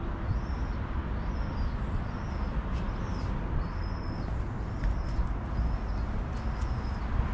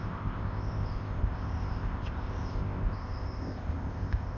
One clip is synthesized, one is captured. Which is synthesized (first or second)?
second